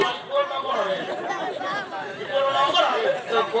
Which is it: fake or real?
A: fake